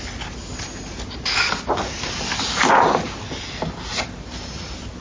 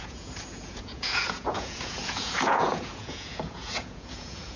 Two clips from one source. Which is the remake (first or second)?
second